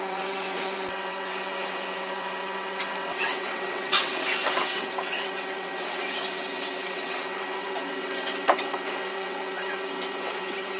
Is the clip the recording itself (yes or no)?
no